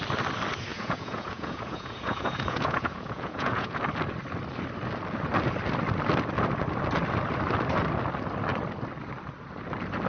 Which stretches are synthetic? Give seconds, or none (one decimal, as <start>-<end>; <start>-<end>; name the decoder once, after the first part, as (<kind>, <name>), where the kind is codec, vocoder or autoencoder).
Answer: 0.7-3.8 (vocoder, Vocos)